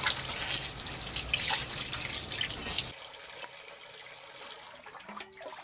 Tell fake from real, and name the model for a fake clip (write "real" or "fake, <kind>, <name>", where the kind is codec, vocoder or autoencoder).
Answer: real